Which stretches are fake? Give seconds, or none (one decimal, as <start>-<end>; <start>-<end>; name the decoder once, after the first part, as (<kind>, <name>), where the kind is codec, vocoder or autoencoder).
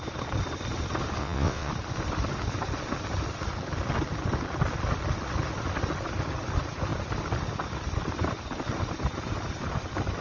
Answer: 1.2-1.7 (vocoder, WaveNeXt)